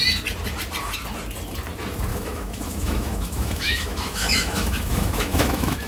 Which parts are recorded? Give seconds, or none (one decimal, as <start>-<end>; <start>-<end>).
0.0-2.1